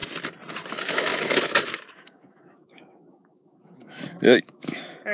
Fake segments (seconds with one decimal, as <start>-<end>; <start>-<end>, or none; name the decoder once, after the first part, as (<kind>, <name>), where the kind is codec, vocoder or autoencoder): 0.7-5.1 (autoencoder, DAC-VAE)